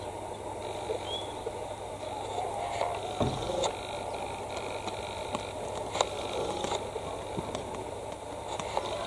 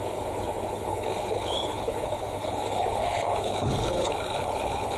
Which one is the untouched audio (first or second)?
first